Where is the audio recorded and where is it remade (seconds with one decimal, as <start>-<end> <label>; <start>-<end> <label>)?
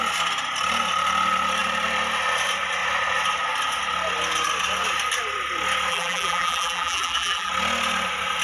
0.0-5.9 recorded; 5.9-7.5 remade; 7.5-8.4 recorded